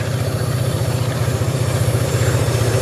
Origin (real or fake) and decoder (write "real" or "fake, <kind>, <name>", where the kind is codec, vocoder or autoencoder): fake, vocoder, BigVGAN v2